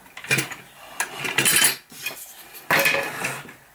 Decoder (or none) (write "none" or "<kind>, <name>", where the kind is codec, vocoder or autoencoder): none